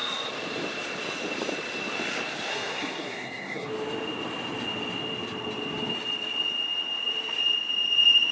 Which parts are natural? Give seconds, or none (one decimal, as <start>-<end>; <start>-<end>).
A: 0.0-2.5; 3.7-8.3